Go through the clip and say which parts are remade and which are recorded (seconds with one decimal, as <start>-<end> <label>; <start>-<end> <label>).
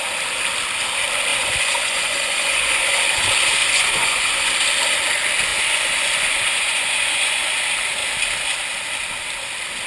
0.0-1.3 recorded; 1.3-3.0 remade; 3.0-3.6 recorded; 3.6-4.5 remade; 4.5-5.5 recorded; 5.5-7.5 remade; 7.5-9.9 recorded